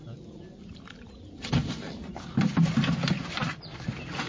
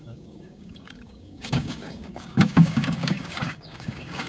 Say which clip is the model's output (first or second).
second